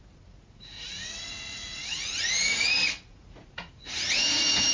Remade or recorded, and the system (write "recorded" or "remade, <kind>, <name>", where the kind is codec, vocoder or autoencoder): remade, vocoder, Vocos